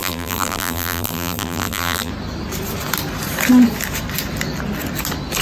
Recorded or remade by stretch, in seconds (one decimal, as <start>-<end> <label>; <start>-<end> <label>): 0.0-2.1 remade; 2.1-5.4 recorded